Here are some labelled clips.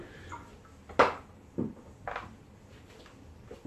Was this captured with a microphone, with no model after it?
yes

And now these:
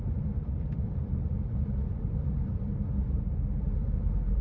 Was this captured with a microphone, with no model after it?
no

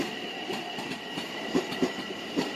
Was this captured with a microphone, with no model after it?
no